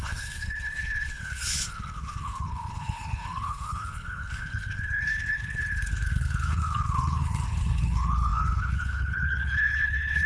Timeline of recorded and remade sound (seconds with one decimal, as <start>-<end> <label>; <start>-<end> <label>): 0.0-10.3 remade